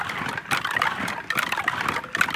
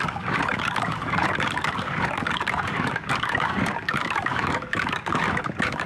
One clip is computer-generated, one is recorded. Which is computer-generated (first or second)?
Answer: second